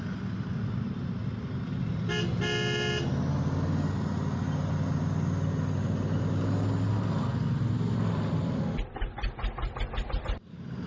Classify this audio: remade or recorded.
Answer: recorded